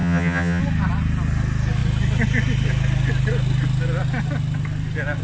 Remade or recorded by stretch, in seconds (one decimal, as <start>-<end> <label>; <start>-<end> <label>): 0.0-0.6 remade; 0.6-5.2 recorded